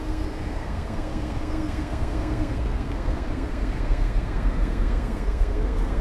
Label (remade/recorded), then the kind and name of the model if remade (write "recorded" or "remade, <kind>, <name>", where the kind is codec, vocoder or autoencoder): remade, codec, SNAC